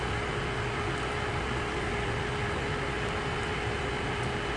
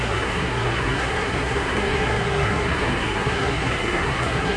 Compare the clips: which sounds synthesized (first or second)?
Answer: second